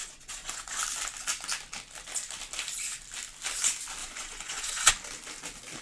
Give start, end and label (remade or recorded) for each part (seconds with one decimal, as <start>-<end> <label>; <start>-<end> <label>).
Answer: 0.0-0.8 remade; 0.8-4.0 recorded; 4.0-4.9 remade; 4.9-5.8 recorded